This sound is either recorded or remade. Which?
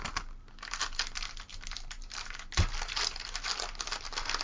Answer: recorded